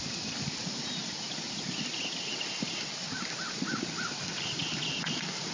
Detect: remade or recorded recorded